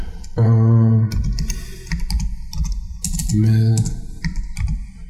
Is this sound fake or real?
real